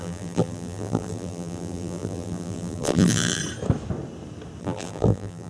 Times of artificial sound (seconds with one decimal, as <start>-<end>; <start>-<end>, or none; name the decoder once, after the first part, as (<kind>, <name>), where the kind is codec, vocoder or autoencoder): 0.0-3.4 (vocoder, BigVGAN v2); 4.6-5.5